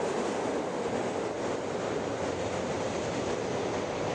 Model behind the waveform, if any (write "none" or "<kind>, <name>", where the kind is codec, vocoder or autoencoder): none